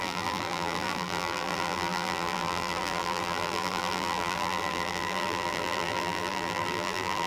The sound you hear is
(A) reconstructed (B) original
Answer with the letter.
A